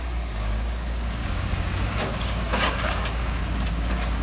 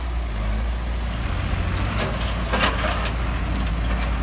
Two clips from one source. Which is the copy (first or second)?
first